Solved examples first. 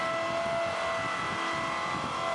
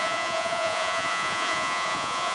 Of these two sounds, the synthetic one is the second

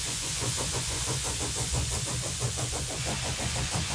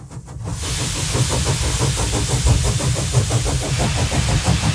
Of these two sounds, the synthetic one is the first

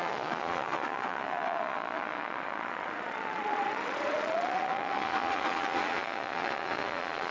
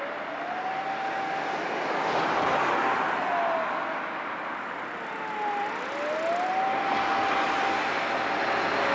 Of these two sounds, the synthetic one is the first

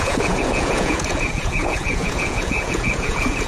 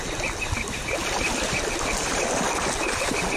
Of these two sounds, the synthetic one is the first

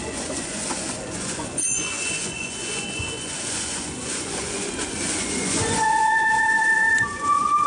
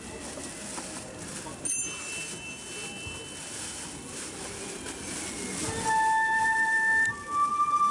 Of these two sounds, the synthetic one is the first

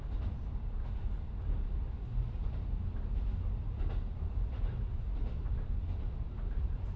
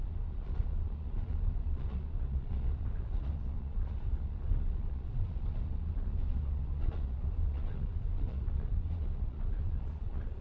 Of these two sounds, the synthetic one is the second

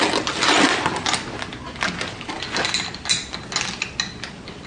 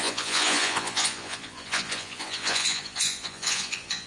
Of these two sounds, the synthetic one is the second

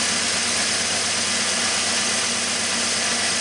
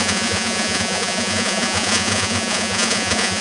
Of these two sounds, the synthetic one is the second